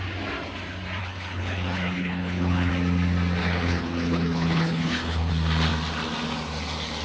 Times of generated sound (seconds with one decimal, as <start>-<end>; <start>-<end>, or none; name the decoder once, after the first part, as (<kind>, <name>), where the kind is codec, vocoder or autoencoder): 1.0-2.7 (codec, HILCodec); 3.4-5.3

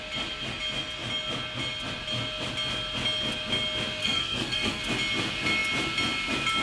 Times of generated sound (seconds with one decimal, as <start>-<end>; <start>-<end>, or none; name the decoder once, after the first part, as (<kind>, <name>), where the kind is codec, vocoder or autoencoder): 4.0-4.8 (codec, SNAC)

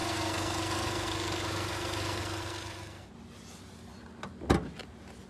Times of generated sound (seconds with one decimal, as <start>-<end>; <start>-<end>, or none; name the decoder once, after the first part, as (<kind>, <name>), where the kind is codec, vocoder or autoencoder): 0.0-3.1 (codec, SNAC)

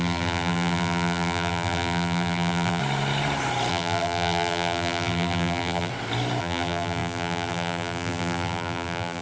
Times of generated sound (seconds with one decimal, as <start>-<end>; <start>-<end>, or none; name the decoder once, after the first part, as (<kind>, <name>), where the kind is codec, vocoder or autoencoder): 0.0-2.8 (vocoder, BigVGAN v2); 3.7-5.9; 6.4-9.2

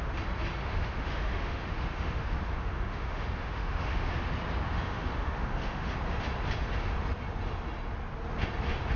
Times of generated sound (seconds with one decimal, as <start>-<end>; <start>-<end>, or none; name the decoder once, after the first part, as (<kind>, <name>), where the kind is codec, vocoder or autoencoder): 0.6-4.1 (autoencoder, DAC-VAE); 4.7-5.9

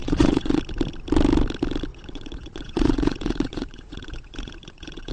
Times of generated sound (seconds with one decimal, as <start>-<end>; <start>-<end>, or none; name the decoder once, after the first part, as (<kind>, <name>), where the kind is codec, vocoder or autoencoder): 0.0-0.6 (vocoder, Vocos); 1.9-5.1